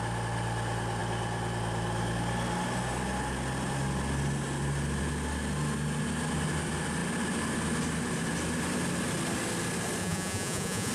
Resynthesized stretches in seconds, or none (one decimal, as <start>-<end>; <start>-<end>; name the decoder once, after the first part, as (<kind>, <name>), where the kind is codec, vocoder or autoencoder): 10.0-10.9 (vocoder, Vocos)